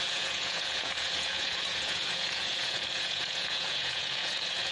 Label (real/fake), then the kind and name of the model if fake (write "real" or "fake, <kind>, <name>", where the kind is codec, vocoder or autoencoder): fake, vocoder, Vocos